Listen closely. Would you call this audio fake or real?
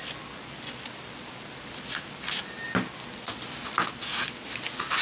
real